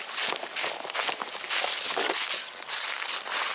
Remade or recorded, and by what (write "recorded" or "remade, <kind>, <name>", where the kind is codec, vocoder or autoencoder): recorded